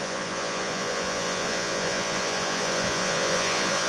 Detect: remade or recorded remade